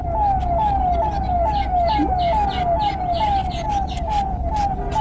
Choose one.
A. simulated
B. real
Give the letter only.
B